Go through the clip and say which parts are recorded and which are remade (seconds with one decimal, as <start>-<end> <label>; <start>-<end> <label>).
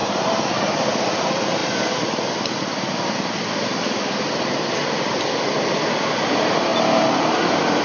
0.0-7.8 recorded